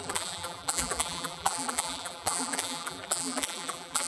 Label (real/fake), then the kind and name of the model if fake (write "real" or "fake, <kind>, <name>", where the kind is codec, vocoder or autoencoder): fake, vocoder, BigVGAN v2